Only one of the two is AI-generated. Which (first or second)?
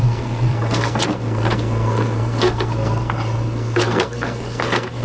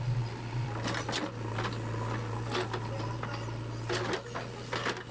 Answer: first